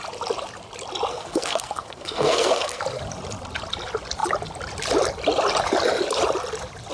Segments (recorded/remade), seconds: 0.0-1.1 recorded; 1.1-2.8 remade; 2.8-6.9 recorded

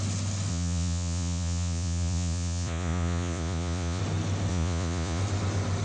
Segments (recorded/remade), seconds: 0.0-0.5 recorded; 0.5-4.0 remade; 4.0-4.5 recorded; 4.5-5.2 remade; 5.2-5.8 recorded